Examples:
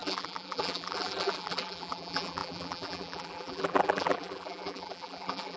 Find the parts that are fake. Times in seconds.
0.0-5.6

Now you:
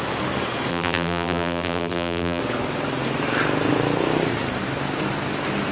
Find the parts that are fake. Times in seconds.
0.7-2.4

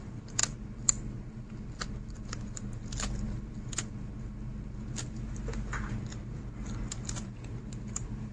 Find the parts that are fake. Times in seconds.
none

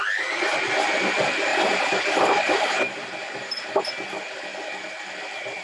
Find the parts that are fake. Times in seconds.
1.5-3.8

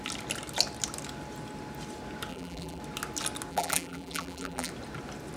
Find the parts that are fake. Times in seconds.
2.3-2.8; 3.5-4.7